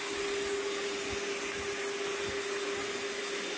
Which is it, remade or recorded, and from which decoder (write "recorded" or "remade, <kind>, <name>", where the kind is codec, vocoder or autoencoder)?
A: recorded